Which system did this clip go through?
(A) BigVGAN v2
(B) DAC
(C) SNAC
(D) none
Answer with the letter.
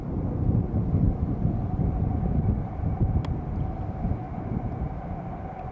D